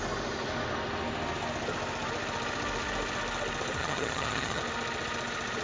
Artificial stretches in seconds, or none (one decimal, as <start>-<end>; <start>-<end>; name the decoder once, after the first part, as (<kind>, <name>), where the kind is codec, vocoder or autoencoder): 3.8-4.6 (vocoder, HiFi-GAN)